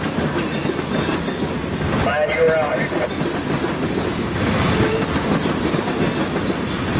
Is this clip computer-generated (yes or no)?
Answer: no